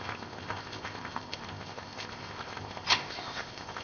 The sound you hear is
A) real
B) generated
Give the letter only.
B